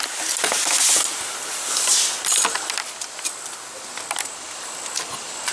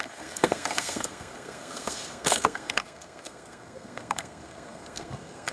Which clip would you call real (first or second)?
first